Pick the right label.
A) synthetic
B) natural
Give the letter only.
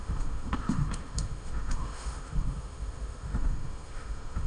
A